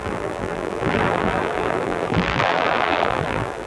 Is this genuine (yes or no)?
no